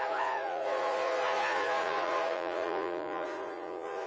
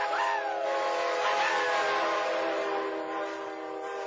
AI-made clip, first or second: first